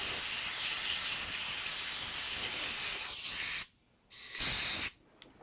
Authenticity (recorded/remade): recorded